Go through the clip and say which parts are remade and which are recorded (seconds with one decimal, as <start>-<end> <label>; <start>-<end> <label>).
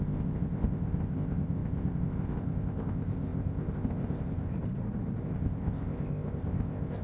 0.0-4.5 remade; 4.5-5.2 recorded; 5.2-7.0 remade